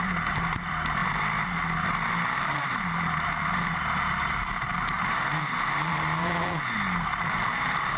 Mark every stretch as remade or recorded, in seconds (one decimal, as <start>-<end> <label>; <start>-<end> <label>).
0.0-1.0 remade; 1.0-2.4 recorded; 2.4-8.0 remade